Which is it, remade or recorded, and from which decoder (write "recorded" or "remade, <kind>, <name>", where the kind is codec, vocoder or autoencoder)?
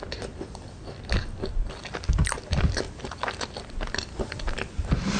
recorded